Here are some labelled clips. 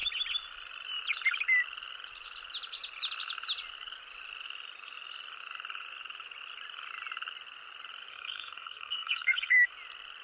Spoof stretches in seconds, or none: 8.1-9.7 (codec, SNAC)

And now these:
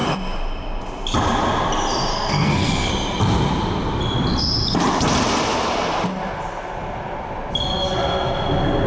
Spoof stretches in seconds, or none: 2.1-2.9 (codec, SNAC)

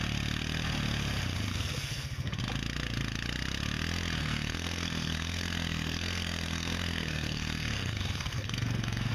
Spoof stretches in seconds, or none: 1.5-2.4 (codec, SNAC); 4.2-9.1

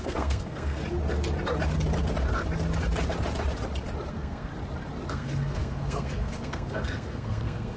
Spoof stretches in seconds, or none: 0.0-0.8 (codec, SNAC); 4.1-4.5; 5.1-7.8